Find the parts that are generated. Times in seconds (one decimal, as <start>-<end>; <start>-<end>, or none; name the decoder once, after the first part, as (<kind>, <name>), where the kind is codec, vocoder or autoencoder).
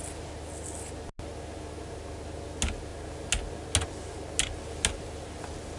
none